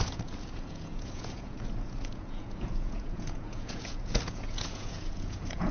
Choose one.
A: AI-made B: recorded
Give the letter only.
A